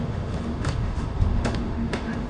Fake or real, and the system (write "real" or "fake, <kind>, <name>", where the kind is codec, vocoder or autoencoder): fake, autoencoder, DAC-VAE